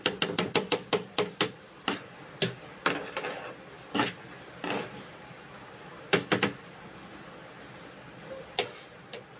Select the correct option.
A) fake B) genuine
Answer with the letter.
B